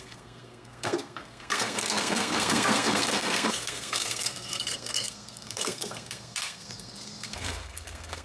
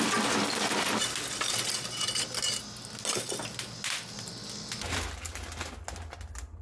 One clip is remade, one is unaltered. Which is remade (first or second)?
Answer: first